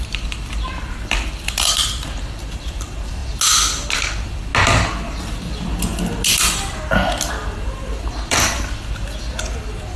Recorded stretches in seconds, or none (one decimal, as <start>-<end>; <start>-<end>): 3.2-3.9; 4.5-7.3